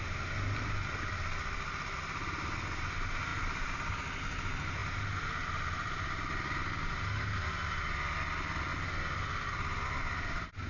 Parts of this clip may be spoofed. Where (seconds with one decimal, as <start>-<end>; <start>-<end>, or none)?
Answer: none